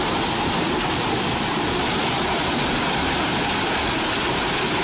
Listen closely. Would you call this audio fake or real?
real